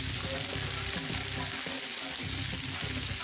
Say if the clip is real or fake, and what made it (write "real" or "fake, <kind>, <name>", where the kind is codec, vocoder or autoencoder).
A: real